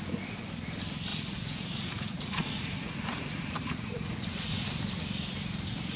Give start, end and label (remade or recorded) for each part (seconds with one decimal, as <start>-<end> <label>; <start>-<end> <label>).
0.0-1.1 recorded; 1.1-4.7 remade; 4.7-6.0 recorded